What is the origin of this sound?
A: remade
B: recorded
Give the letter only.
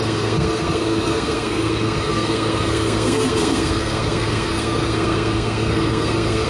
A